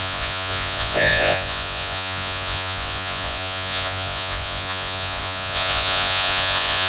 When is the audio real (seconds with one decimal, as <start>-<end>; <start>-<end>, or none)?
none